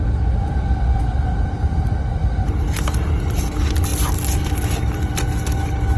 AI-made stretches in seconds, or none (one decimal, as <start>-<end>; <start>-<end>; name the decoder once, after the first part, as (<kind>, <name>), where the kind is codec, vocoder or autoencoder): none